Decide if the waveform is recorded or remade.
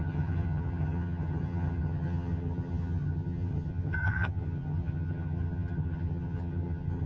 remade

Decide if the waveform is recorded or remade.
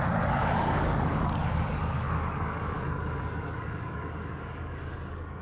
remade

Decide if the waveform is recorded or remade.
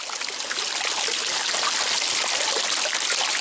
recorded